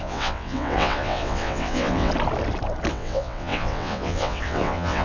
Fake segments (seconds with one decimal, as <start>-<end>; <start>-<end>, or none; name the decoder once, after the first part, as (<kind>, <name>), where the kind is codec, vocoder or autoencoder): 0.0-2.1 (vocoder, WaveNeXt); 2.9-5.0

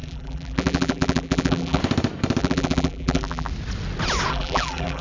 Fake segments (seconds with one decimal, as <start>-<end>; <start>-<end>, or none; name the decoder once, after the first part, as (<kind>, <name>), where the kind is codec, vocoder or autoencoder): 0.0-1.8 (vocoder, BigVGAN v2); 2.4-3.5; 4.3-5.0

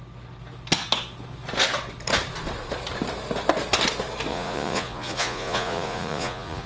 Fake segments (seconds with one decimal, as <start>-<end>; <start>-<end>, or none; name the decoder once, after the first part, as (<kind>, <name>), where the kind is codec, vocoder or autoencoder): 4.3-6.7 (vocoder, Vocos)